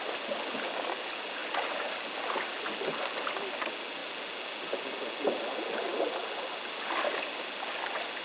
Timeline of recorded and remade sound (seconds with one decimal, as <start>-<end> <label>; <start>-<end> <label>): 0.0-8.2 recorded